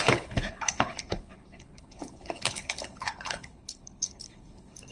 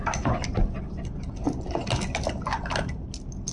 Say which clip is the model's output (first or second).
first